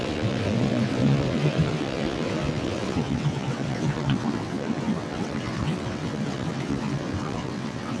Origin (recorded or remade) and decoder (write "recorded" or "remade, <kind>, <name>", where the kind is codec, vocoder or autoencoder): remade, vocoder, WaveNeXt